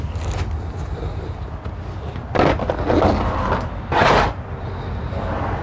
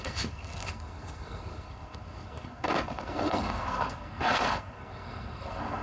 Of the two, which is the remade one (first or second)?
second